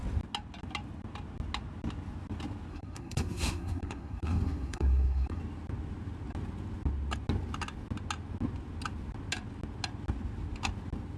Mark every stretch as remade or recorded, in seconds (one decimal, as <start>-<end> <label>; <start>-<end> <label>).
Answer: 0.0-2.7 recorded; 2.7-5.4 remade; 5.4-11.2 recorded